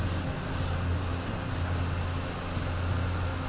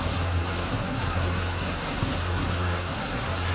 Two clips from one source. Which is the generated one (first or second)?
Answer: second